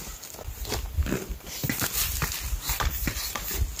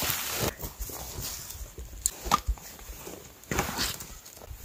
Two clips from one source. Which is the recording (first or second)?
second